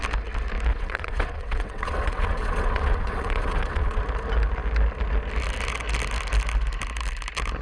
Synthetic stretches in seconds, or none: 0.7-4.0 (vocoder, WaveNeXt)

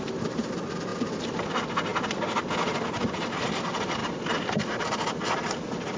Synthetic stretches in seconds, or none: none